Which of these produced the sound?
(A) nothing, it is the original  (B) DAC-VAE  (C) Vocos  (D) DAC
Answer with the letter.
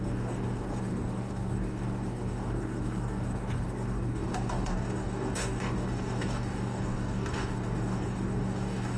D